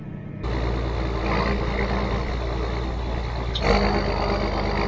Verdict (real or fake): real